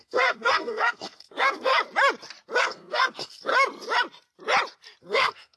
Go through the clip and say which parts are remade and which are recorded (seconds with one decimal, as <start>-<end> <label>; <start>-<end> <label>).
0.0-1.7 remade; 1.7-2.6 recorded; 2.6-3.5 remade; 3.5-5.0 recorded; 5.0-5.6 remade